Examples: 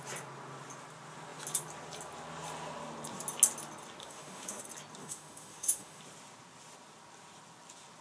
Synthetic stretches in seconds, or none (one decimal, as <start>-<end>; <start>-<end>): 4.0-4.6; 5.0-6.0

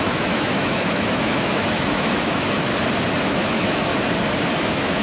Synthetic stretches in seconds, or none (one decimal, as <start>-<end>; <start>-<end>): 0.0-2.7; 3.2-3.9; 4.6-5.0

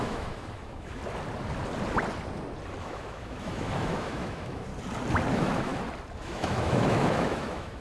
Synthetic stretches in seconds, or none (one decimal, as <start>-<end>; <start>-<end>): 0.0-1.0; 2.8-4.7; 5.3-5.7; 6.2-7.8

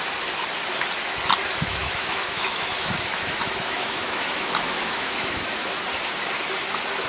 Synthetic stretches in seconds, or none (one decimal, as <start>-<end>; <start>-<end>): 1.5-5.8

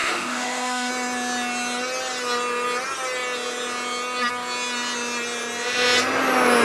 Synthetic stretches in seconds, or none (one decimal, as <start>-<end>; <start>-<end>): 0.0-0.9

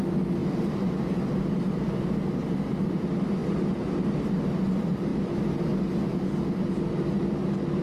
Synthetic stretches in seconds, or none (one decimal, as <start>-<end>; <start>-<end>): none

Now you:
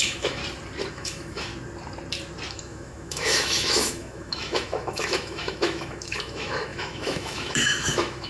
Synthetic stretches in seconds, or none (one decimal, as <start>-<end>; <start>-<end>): 0.0-0.4; 0.9-1.5; 2.5-8.3